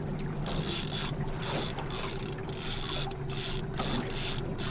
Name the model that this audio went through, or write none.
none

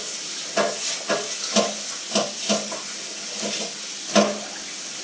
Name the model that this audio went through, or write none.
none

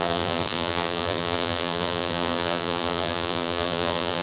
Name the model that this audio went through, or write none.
vocoder, BigVGAN v2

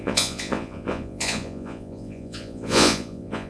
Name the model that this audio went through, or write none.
vocoder, Vocos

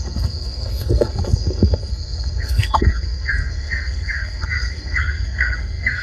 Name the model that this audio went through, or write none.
codec, SNAC